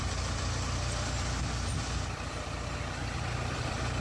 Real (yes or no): yes